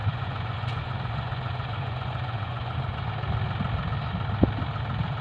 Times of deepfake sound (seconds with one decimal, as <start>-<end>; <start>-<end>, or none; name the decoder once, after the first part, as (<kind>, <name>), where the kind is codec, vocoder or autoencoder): 0.0-3.1 (vocoder, Vocos)